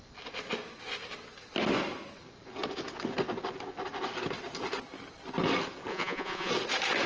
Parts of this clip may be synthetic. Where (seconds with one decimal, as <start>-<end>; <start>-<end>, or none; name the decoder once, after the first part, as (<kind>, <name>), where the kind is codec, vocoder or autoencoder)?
5.9-6.5 (vocoder, Vocos)